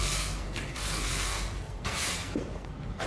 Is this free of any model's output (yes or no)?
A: no